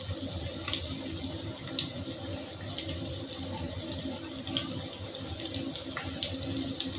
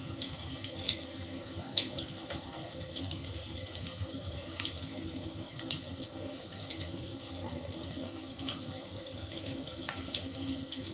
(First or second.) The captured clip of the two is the first